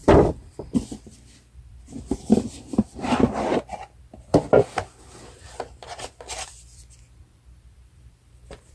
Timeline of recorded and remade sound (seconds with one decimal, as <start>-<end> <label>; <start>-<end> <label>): 0.0-1.1 recorded; 1.1-3.5 remade; 3.5-6.1 recorded; 6.1-8.7 remade